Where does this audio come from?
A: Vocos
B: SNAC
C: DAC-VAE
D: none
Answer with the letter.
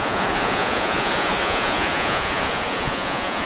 A